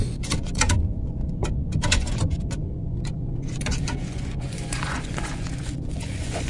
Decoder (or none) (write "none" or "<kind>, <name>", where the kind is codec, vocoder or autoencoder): vocoder, Vocos